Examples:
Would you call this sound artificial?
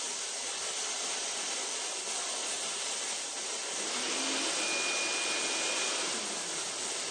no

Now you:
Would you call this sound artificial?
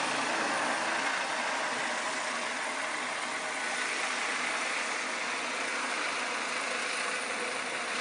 no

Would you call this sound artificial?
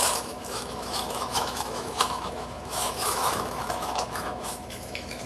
yes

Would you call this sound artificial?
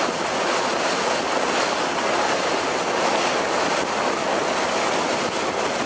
no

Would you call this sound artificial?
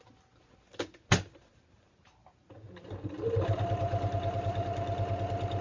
no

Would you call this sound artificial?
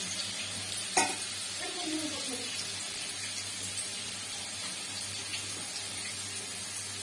no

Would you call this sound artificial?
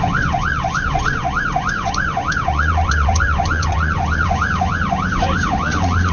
yes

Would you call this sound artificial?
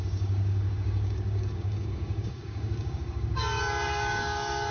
yes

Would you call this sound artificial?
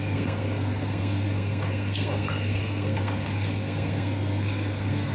yes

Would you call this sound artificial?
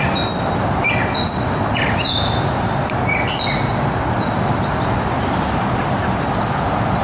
no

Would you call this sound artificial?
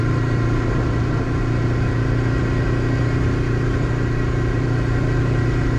no